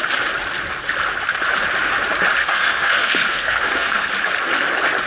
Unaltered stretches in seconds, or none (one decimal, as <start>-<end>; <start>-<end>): 0.0-2.4; 4.1-5.1